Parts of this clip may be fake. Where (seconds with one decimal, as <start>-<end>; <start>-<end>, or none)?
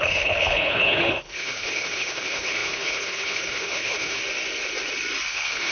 0.0-4.2; 5.3-5.7